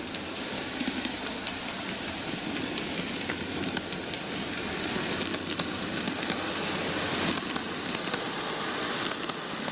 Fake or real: real